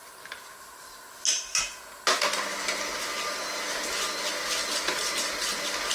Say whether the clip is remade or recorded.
recorded